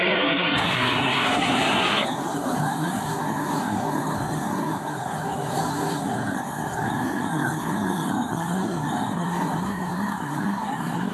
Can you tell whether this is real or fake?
fake